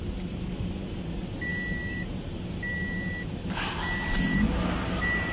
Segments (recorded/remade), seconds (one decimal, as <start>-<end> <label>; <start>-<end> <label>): 0.0-5.3 recorded